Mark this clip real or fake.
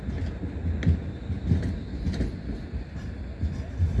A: real